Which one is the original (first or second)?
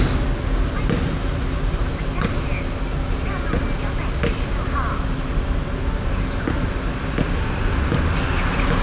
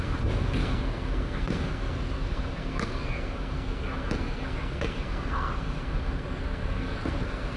first